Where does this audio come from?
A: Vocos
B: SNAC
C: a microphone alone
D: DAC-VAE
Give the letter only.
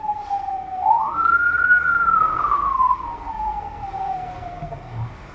B